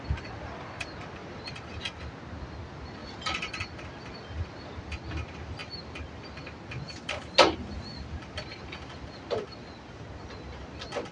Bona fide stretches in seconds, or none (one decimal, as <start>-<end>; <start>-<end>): 0.0-1.2; 1.8-3.0; 3.5-11.1